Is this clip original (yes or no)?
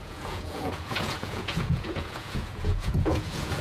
no